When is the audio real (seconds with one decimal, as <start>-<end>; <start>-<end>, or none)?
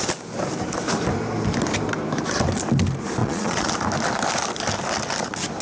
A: 0.0-3.2; 3.7-5.6